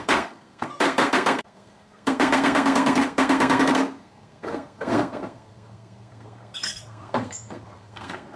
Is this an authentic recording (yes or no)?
no